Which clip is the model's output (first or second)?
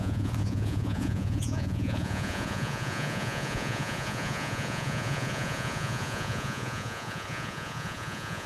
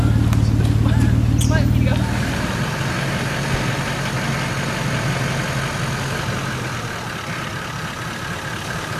first